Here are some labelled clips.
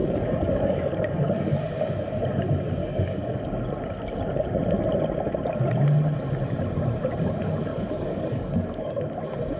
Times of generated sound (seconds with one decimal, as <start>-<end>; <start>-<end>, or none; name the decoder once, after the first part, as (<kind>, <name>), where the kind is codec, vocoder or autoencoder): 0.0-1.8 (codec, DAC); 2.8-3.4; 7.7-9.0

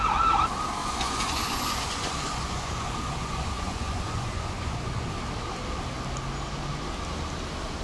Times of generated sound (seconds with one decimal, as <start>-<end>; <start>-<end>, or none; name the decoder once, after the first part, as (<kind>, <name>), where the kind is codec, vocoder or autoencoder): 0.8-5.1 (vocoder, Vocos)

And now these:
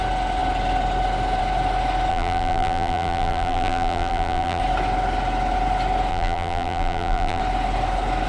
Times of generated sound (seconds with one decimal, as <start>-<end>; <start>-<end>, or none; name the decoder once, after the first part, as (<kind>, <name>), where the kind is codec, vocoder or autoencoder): 2.1-4.6 (vocoder, BigVGAN v2); 6.1-7.4